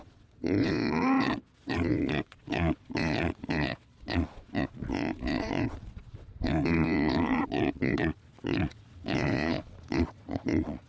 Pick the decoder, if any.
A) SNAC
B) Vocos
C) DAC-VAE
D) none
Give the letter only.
B